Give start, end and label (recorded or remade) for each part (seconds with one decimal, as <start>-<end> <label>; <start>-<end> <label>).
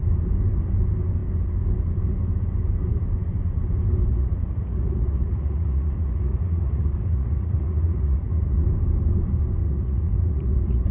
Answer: 0.0-4.1 recorded; 4.1-8.6 remade; 8.6-9.6 recorded; 9.6-10.9 remade